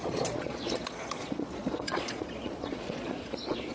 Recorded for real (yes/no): no